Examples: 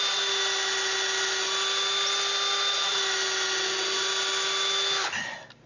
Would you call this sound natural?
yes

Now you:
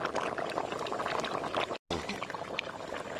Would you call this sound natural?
yes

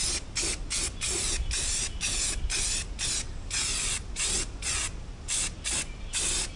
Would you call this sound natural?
yes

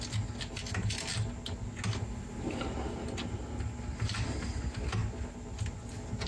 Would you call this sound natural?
yes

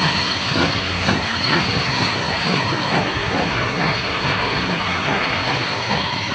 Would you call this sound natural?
no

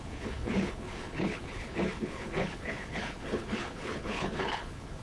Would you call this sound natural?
no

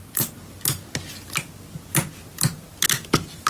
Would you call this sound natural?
yes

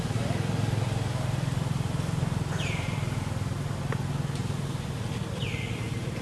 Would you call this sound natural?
yes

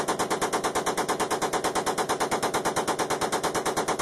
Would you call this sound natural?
yes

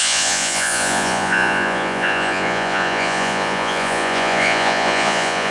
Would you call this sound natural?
no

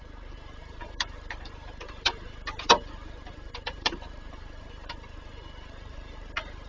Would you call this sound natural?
no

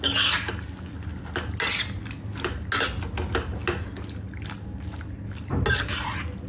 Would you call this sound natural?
yes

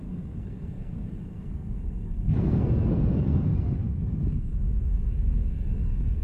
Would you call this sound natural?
no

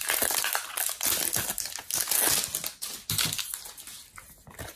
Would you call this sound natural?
yes